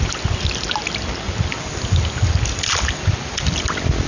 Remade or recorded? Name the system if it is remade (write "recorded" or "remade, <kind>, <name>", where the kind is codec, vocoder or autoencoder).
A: recorded